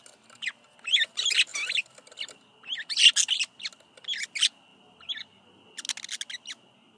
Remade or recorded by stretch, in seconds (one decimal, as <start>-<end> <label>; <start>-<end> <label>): 0.0-7.0 recorded